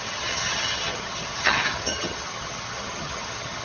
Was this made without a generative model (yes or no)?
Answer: no